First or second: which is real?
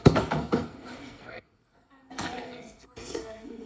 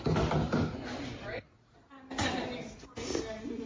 second